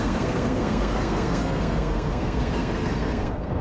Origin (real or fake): fake